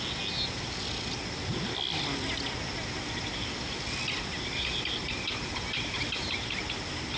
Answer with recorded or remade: recorded